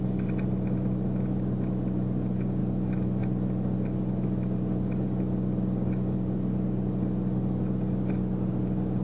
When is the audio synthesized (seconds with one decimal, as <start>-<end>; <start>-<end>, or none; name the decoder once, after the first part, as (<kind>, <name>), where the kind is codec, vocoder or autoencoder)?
none